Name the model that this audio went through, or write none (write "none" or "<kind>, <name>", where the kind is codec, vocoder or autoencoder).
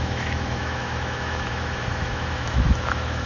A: autoencoder, DAC-VAE